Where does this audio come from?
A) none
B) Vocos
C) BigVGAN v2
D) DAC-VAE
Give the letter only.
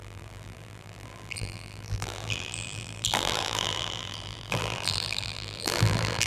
C